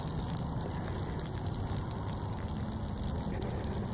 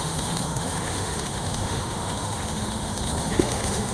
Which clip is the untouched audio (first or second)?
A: first